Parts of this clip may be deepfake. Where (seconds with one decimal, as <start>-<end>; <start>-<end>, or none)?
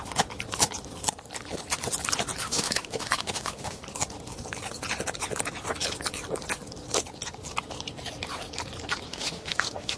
2.4-3.8; 9.1-10.0